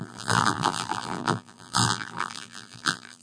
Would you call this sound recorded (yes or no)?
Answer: no